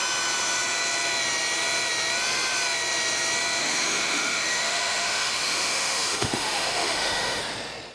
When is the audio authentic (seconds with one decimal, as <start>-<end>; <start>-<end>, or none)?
0.0-3.6; 7.4-7.9